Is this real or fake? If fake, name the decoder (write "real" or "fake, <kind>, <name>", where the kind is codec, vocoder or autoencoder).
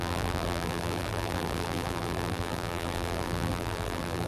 fake, vocoder, BigVGAN v2